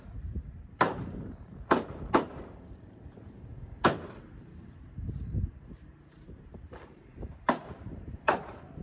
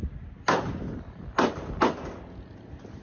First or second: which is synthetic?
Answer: first